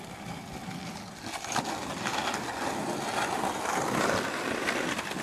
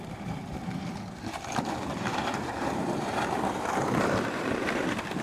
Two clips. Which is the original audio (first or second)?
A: first